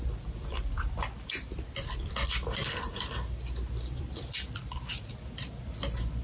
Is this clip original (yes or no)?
no